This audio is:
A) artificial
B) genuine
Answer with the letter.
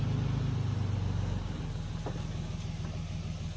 B